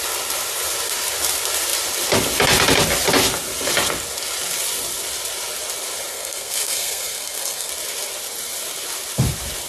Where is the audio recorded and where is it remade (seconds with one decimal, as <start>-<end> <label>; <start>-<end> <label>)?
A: 0.0-6.1 recorded; 6.1-7.7 remade; 7.7-9.7 recorded